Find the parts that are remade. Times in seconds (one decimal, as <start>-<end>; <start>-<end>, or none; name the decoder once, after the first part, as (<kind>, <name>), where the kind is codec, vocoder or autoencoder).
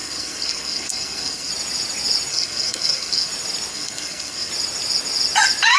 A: 0.0-1.5 (codec, SNAC); 2.3-3.3; 3.7-4.5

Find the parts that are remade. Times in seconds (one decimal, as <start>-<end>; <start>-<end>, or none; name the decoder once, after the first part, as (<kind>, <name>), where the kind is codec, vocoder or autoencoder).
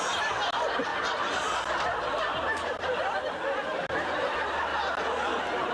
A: none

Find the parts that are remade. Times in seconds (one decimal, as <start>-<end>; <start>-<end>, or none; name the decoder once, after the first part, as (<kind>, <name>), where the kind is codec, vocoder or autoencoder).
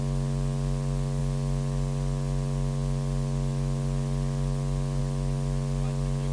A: none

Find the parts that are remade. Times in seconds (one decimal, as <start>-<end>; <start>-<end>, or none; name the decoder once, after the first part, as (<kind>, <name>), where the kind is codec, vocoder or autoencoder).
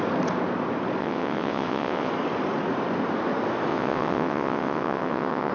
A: 1.0-2.1 (vocoder, WaveNeXt); 3.7-5.5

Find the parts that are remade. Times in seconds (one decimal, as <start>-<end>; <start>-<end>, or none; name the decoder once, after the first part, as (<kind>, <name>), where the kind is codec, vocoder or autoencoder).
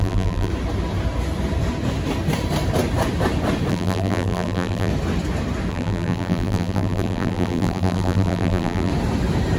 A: 0.0-0.5 (vocoder, BigVGAN v2); 3.7-4.9; 5.7-8.9